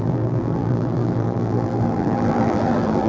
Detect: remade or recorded remade